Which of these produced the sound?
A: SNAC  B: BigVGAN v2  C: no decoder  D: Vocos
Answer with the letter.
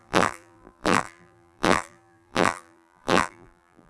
B